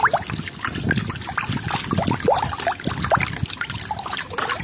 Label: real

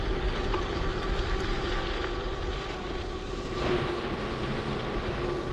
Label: real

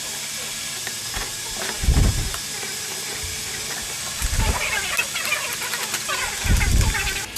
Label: real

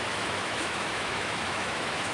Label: fake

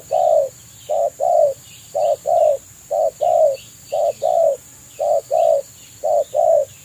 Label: real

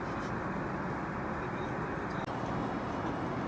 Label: real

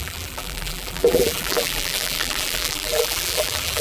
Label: fake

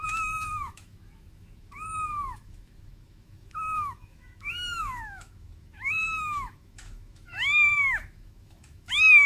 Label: fake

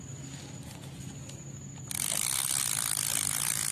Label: real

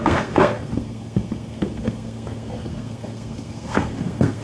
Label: fake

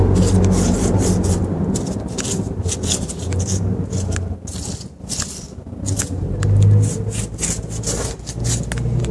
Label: real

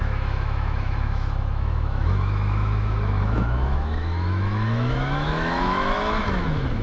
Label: fake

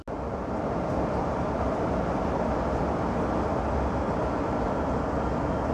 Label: real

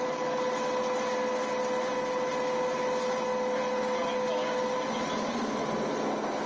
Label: real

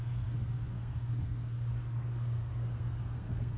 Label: fake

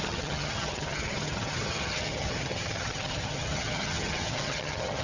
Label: fake